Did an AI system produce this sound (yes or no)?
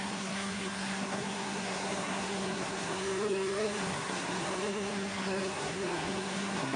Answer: yes